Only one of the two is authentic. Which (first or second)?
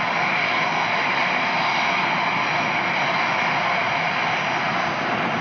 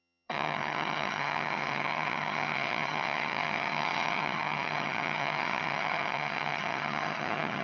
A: first